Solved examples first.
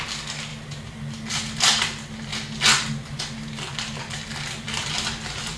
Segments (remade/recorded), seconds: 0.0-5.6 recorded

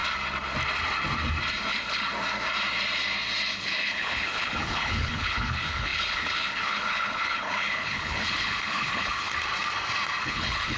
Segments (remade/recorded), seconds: 0.0-1.7 recorded; 1.7-2.1 remade; 2.1-3.5 recorded; 3.5-9.3 remade; 9.3-10.2 recorded; 10.2-10.8 remade

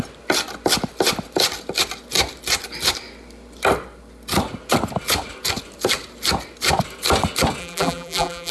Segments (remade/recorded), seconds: 0.0-7.6 recorded; 7.6-8.5 remade

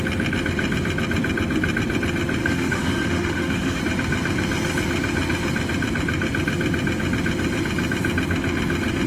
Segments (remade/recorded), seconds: 0.0-2.4 recorded; 2.4-3.8 remade; 3.8-9.1 recorded